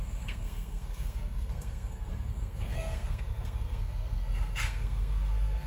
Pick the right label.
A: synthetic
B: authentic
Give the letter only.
A